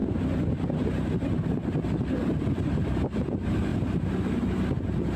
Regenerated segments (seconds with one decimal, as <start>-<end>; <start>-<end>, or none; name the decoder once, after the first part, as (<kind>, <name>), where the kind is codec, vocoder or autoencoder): none